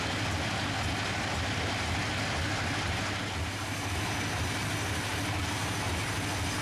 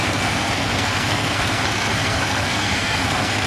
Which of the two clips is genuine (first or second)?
first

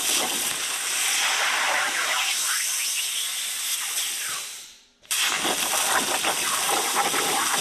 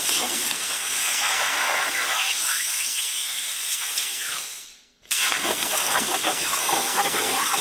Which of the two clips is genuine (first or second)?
first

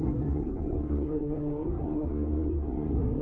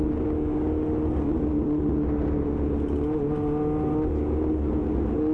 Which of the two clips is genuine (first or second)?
second